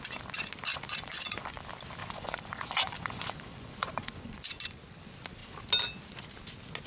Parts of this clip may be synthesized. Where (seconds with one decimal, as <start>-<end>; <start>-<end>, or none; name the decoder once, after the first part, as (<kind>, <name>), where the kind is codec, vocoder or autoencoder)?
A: 0.7-1.6 (vocoder, Vocos); 2.0-4.6